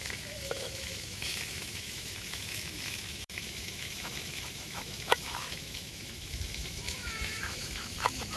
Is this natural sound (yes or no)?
no